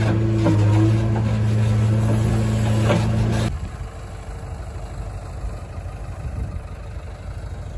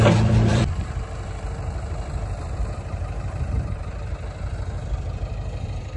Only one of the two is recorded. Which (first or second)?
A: first